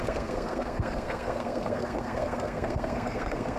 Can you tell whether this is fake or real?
fake